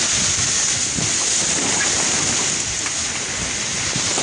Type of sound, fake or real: real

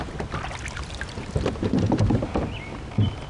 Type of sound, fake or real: real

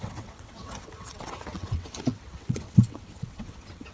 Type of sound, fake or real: fake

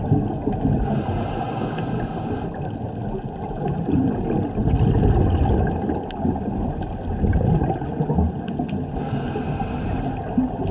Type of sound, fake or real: real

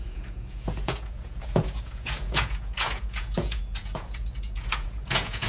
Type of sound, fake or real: fake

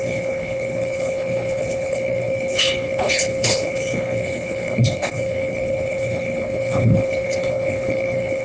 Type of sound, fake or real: fake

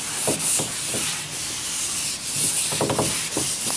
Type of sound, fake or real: real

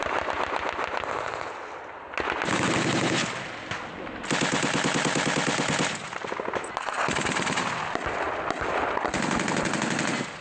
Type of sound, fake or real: real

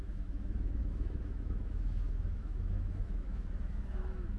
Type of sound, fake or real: fake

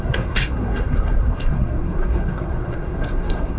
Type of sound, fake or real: fake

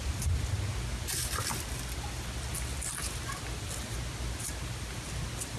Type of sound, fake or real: real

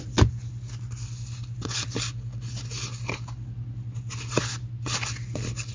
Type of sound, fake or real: real